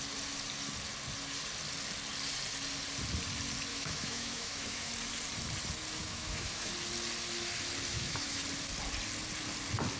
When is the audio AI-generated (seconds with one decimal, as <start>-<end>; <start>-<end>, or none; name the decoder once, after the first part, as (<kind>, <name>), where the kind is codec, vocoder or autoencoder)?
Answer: 3.7-4.9 (autoencoder, DAC-VAE); 6.0-6.7; 7.9-8.4